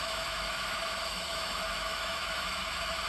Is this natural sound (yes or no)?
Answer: no